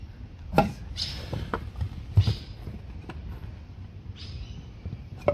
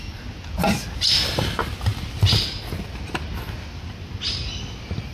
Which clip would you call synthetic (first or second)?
first